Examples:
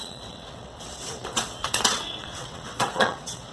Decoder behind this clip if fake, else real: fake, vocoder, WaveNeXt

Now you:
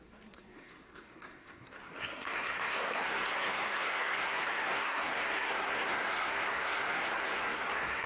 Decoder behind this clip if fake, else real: fake, codec, SNAC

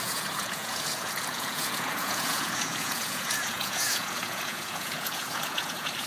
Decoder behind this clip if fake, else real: fake, vocoder, Vocos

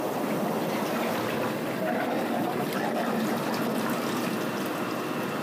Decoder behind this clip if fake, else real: real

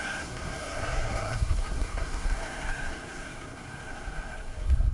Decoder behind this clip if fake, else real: fake, codec, SNAC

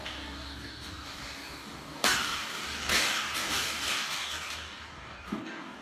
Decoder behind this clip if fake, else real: fake, codec, DAC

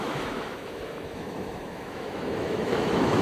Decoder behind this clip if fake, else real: fake, autoencoder, DAC-VAE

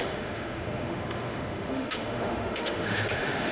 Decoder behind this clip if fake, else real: fake, autoencoder, DAC-VAE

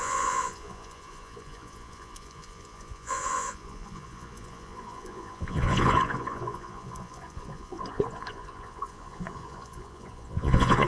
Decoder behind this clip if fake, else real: fake, vocoder, Vocos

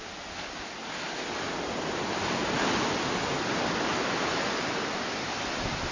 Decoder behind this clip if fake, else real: real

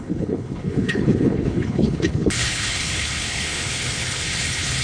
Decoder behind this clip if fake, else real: fake, codec, HILCodec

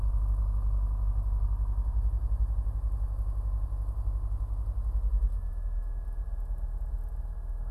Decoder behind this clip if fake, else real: real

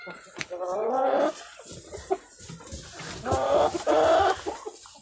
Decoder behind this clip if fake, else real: real